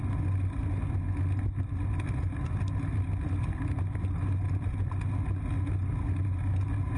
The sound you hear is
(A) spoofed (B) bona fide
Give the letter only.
B